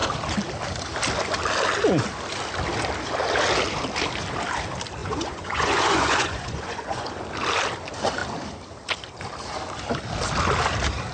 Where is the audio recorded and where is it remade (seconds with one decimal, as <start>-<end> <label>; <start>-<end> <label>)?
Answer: 0.0-5.0 recorded; 5.0-7.2 remade; 7.2-11.1 recorded